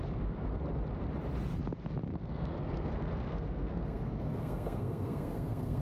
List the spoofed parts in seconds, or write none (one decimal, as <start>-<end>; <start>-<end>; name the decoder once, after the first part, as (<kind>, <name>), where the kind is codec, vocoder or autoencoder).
0.0-0.6 (codec, SNAC); 2.1-5.8